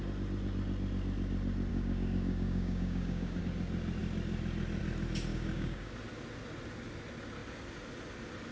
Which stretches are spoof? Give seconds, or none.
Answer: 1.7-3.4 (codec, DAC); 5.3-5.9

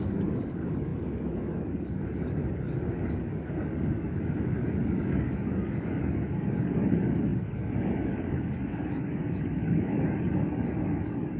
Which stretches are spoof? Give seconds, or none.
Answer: 0.0-11.4 (codec, DAC)

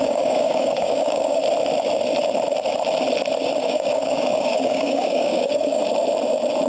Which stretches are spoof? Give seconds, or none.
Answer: 0.0-1.4 (codec, DAC); 3.6-5.8

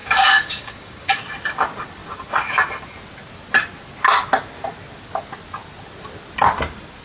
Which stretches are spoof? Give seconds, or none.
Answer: 0.0-1.2 (codec, DAC)

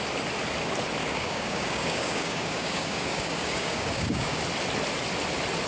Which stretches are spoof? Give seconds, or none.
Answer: 1.0-4.4 (codec, DAC)